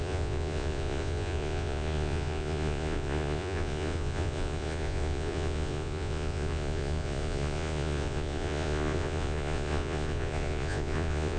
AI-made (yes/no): yes